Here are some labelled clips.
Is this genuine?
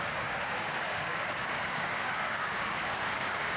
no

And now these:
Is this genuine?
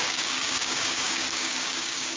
no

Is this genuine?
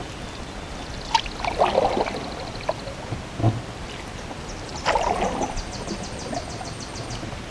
yes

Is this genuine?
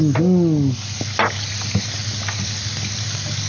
yes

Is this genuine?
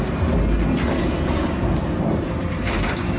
yes